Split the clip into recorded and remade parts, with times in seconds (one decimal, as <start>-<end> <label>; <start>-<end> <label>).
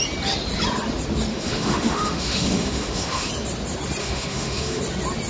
0.0-1.3 recorded; 1.3-3.3 remade; 3.3-4.0 recorded; 4.0-4.8 remade; 4.8-5.3 recorded